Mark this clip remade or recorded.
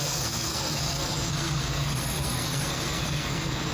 remade